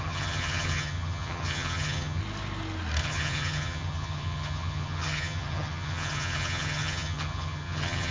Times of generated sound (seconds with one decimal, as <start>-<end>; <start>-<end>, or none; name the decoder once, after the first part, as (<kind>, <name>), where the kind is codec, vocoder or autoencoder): 0.0-2.2 (vocoder, HiFi-GAN); 3.0-8.1